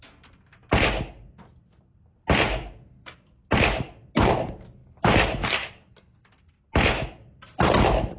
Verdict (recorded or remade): recorded